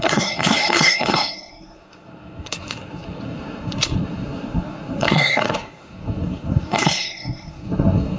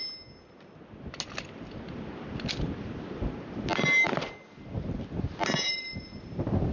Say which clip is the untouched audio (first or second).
second